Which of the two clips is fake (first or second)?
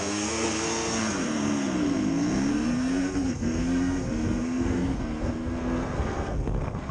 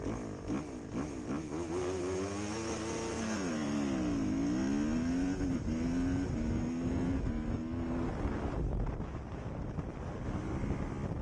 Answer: first